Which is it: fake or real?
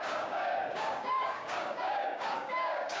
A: fake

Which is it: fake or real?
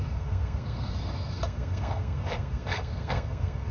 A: fake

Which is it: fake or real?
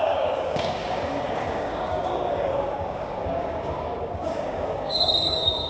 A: fake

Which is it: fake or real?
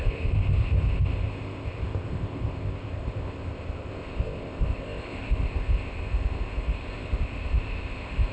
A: fake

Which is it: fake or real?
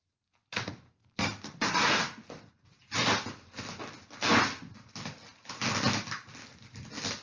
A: real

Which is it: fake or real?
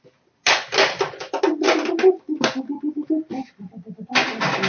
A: real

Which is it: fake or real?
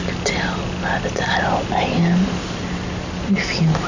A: real